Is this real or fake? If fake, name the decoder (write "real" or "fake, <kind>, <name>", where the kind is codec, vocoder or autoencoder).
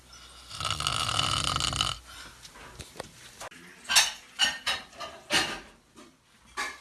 real